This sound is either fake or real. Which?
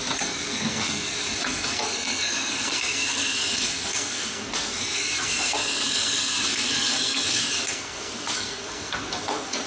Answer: fake